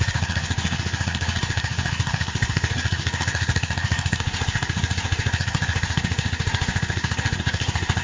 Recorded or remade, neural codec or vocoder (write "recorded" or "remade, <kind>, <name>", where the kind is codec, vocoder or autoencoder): remade, codec, SNAC